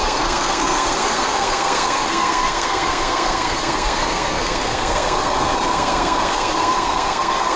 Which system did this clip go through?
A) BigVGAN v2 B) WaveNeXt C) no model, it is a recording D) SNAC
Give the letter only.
D